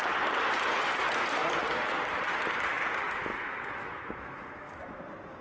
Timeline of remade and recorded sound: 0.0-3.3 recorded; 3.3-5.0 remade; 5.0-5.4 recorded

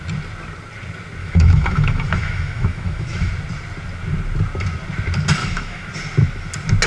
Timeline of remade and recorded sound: 0.0-1.2 recorded; 1.2-3.3 remade; 3.3-5.4 recorded; 5.4-5.9 remade; 5.9-6.9 recorded

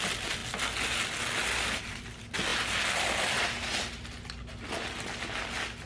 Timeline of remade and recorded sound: 0.0-5.9 recorded

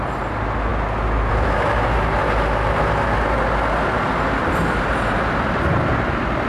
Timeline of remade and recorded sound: 0.0-6.5 recorded

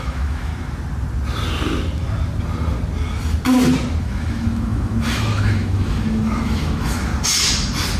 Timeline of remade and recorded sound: 0.0-0.5 remade; 0.5-4.0 recorded; 4.0-7.1 remade; 7.1-8.0 recorded

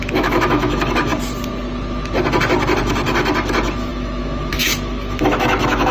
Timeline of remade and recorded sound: 0.0-1.1 remade; 1.1-2.8 recorded; 2.8-5.9 remade

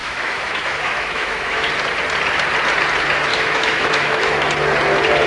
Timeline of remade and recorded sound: 0.0-1.7 remade; 1.7-3.3 recorded; 3.3-4.5 remade; 4.5-5.3 recorded